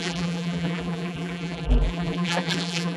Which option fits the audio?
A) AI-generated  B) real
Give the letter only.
A